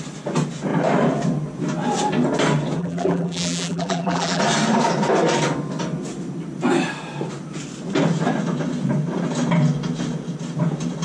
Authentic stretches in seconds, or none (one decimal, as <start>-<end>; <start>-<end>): 0.0-2.8; 4.4-11.0